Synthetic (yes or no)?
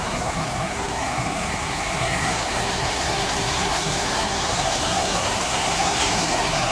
yes